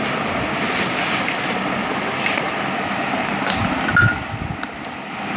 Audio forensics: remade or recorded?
recorded